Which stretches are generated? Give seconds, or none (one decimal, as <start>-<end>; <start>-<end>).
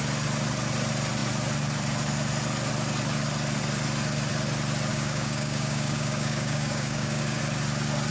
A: 4.9-7.4